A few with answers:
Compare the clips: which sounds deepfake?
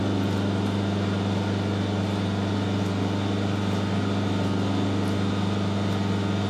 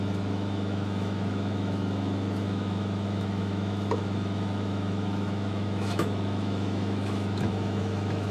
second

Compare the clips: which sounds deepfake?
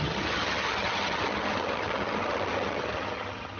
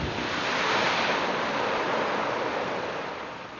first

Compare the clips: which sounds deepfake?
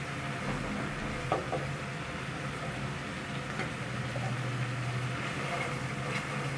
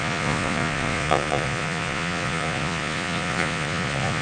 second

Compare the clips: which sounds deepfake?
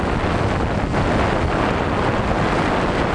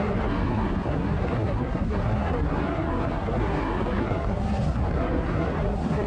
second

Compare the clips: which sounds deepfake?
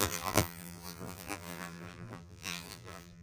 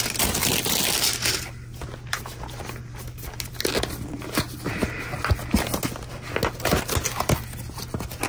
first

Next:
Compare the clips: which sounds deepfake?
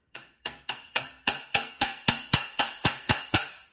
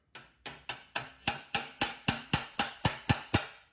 first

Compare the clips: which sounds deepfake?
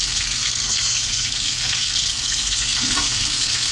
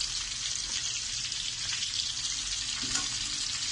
first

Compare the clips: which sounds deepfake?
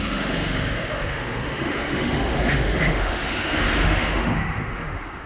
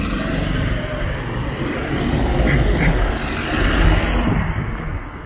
first